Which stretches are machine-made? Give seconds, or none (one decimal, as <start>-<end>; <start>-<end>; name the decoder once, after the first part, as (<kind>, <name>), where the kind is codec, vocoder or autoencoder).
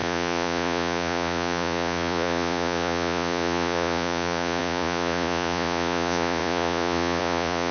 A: 0.0-7.7 (vocoder, Vocos)